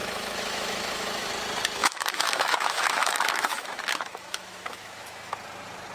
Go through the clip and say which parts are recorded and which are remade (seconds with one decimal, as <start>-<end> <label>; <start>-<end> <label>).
0.0-1.3 remade; 1.3-1.8 recorded; 1.8-5.3 remade; 5.3-5.9 recorded

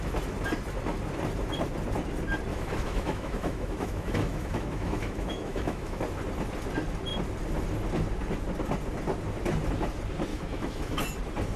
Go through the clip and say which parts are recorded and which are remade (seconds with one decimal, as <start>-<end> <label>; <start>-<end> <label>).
0.0-2.5 recorded; 2.5-6.0 remade; 6.0-10.3 recorded; 10.3-11.0 remade; 11.0-11.6 recorded

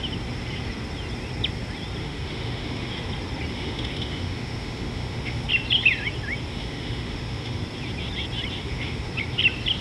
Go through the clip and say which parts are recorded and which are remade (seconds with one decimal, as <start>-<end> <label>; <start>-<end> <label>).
0.0-2.0 recorded; 2.0-2.9 remade; 2.9-3.5 recorded; 3.5-5.5 remade; 5.5-6.5 recorded; 6.5-7.6 remade; 7.6-8.6 recorded; 8.6-9.1 remade; 9.1-9.8 recorded